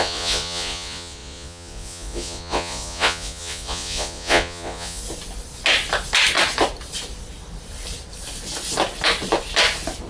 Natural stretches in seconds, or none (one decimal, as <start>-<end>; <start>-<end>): 5.0-10.1